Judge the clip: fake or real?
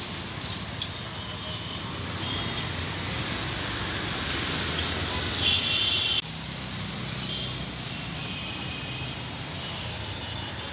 real